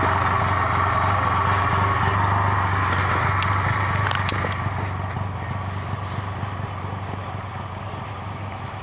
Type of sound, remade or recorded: recorded